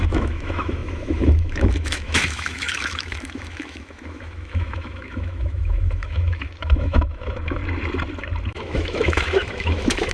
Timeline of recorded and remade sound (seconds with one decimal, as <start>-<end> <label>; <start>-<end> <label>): 0.0-7.6 remade; 7.6-8.5 recorded; 8.5-10.1 remade